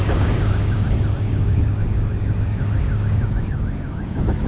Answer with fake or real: fake